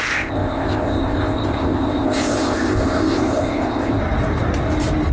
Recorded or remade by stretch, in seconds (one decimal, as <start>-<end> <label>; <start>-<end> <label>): 0.0-4.0 remade; 4.0-5.1 recorded